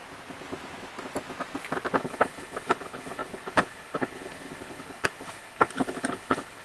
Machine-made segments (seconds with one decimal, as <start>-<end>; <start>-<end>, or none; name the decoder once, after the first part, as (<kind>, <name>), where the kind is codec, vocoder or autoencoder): 2.0-6.6 (codec, HILCodec)